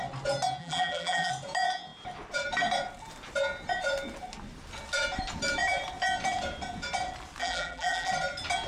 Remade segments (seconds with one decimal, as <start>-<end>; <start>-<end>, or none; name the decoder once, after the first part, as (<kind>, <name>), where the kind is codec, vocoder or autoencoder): 0.6-1.3 (vocoder, BigVGAN v2); 7.4-8.1